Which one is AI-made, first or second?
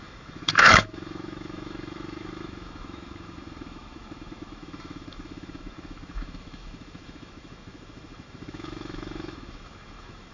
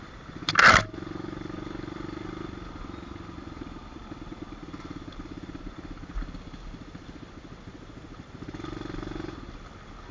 first